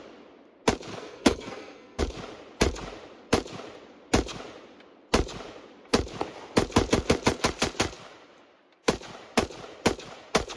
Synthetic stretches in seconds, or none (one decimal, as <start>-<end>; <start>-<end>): 0.9-2.0